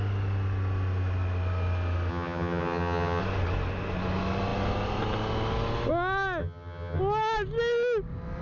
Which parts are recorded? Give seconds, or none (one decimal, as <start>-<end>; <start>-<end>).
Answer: 0.0-2.1; 3.2-6.4; 7.0-8.4